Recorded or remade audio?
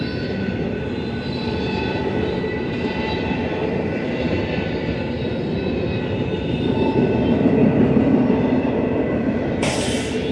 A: recorded